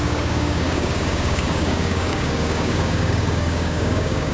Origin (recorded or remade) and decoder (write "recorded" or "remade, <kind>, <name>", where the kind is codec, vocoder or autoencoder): remade, codec, DAC